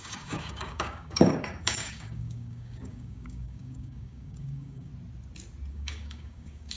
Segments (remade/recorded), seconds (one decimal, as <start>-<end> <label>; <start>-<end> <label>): 0.0-4.9 remade; 4.9-5.7 recorded; 5.7-6.8 remade